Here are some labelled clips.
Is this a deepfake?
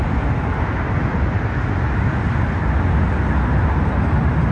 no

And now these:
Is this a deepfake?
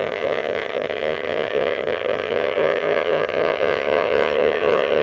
yes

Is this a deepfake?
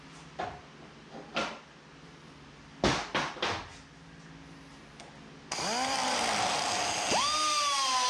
no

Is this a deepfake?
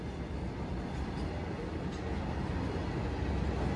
no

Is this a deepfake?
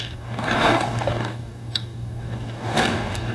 yes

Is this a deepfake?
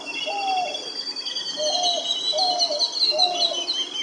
no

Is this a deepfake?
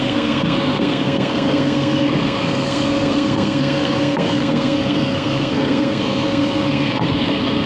yes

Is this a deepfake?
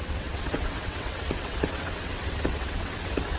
yes